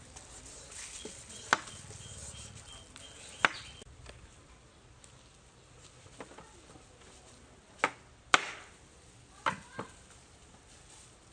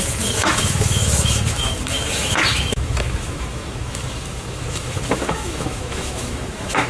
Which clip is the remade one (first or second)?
second